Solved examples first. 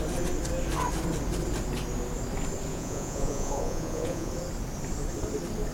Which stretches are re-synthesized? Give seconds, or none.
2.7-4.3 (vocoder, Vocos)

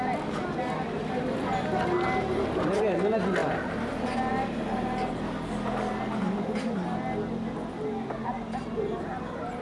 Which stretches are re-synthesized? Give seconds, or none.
none